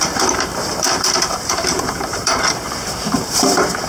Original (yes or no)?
no